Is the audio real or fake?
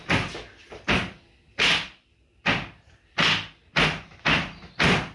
fake